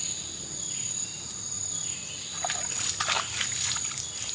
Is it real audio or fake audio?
real